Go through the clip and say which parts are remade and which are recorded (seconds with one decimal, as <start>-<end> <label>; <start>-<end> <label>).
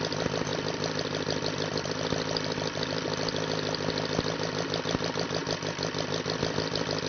0.0-7.1 recorded